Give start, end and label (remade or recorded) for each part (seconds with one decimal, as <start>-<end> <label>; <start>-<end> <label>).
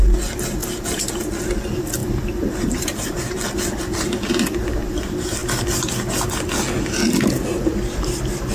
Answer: 0.0-2.0 recorded; 2.0-3.8 remade; 3.8-8.5 recorded